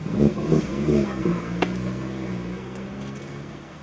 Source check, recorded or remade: remade